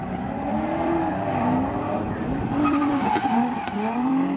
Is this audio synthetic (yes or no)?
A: yes